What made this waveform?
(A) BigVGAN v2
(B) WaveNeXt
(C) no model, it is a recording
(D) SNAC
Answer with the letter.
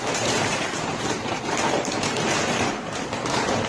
A